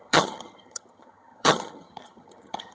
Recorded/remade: remade